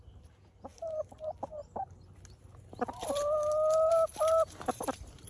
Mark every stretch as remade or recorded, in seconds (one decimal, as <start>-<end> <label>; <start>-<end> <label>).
0.0-0.7 remade; 0.7-3.9 recorded; 3.9-5.3 remade